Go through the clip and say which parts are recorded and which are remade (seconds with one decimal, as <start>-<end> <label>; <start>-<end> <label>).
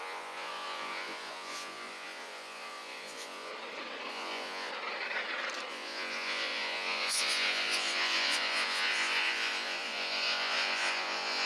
0.0-3.5 remade; 3.5-4.1 recorded; 4.1-4.7 remade; 4.7-5.7 recorded; 5.7-11.5 remade